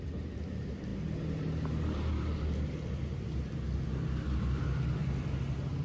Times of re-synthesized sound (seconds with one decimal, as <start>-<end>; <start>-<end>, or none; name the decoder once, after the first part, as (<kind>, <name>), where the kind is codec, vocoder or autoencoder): none